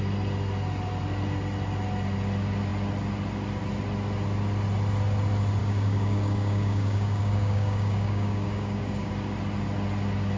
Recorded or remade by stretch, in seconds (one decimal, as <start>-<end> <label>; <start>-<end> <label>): 0.0-5.6 recorded; 5.6-9.1 remade; 9.1-10.4 recorded